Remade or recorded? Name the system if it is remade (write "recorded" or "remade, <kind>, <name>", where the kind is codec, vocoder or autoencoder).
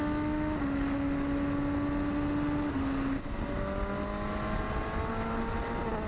recorded